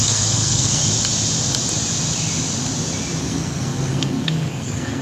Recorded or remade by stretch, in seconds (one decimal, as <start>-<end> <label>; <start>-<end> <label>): 0.0-0.8 remade; 0.8-3.2 recorded; 3.2-5.0 remade